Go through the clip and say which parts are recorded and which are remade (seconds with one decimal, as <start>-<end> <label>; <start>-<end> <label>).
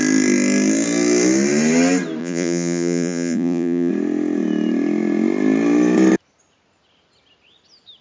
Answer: 0.0-2.2 recorded; 2.2-3.9 remade; 3.9-8.0 recorded